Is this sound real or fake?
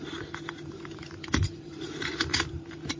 fake